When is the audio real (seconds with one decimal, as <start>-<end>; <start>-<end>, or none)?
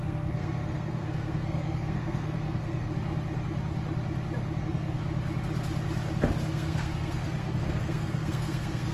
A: 2.9-4.6; 5.0-6.4